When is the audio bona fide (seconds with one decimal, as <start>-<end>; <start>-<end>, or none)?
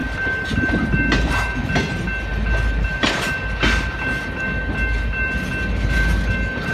0.0-6.7